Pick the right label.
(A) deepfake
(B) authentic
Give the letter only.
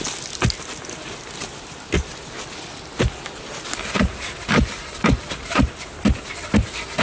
B